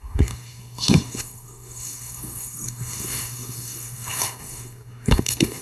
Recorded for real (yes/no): no